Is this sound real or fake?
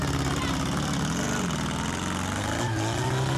real